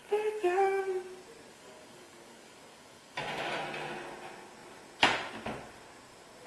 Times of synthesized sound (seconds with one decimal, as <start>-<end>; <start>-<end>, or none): 0.0-0.8; 1.5-3.5

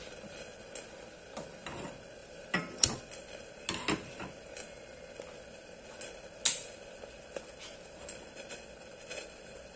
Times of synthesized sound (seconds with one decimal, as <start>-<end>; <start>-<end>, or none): 2.2-3.0

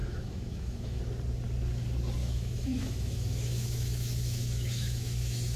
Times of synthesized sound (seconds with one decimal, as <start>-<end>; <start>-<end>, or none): 0.0-1.0; 2.2-5.6

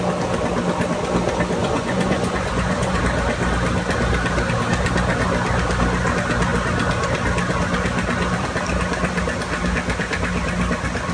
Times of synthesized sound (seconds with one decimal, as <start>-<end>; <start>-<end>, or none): 1.6-3.0

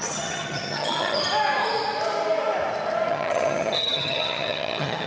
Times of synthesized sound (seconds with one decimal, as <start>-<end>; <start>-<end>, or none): 0.0-1.2; 3.1-5.1

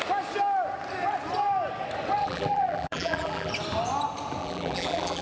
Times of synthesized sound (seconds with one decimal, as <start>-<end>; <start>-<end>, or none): 2.2-3.5; 4.4-5.2